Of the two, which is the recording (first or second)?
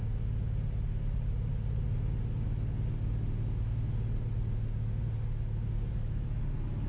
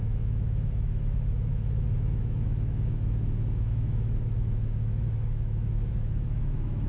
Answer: first